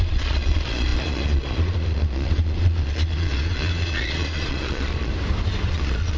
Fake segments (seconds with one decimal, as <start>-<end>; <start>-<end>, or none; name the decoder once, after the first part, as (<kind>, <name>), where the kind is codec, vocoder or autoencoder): 0.0-5.1 (vocoder, Vocos); 5.7-6.2